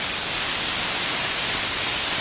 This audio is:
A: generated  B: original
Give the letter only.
B